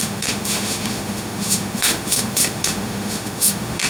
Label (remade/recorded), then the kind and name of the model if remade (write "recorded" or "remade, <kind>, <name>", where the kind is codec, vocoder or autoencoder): remade, autoencoder, DAC-VAE